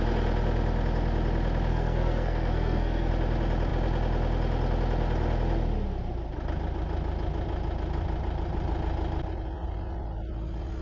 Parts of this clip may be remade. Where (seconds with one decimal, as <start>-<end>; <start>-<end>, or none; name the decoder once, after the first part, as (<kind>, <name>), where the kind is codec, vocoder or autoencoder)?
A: 1.7-3.1 (codec, SNAC)